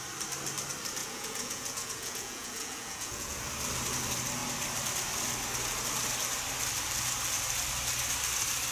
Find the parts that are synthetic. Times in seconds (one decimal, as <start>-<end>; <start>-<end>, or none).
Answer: 1.0-3.4